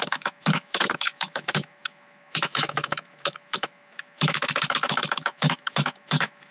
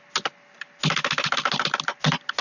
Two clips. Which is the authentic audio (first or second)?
second